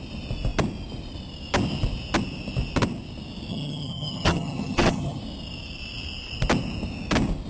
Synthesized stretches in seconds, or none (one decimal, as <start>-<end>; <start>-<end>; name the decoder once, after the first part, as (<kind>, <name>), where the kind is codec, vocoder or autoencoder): 3.5-5.2 (vocoder, HiFi-GAN)